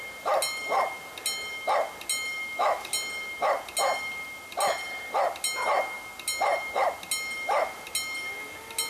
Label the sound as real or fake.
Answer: real